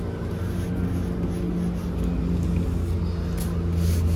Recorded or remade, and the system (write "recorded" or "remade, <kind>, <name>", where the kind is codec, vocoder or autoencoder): recorded